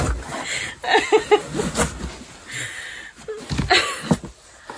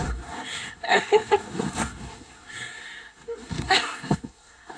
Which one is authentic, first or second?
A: first